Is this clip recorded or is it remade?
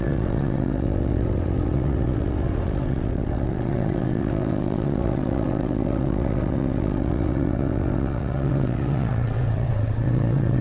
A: remade